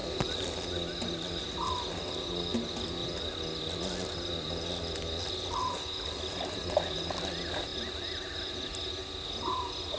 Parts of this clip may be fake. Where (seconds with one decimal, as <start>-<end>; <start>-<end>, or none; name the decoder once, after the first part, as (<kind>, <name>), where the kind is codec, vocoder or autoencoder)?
none